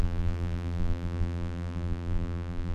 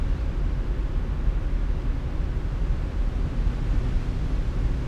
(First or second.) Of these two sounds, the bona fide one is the second